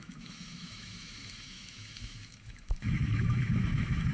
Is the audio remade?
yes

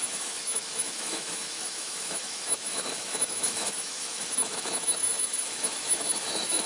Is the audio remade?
yes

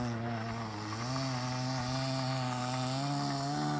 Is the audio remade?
no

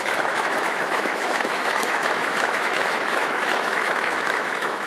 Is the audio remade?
yes